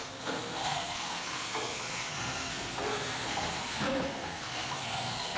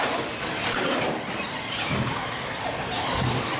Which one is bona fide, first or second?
second